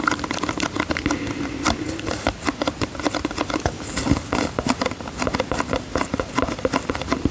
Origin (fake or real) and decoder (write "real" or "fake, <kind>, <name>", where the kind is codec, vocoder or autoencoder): real